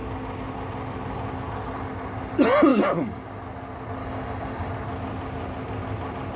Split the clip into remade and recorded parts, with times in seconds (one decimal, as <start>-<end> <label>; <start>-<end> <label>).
0.0-2.7 recorded; 2.7-3.3 remade; 3.3-4.0 recorded; 4.0-4.7 remade; 4.7-6.4 recorded